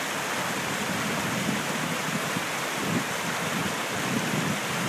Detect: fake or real real